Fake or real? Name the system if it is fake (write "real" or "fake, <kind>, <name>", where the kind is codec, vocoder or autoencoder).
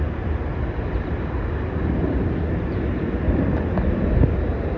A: real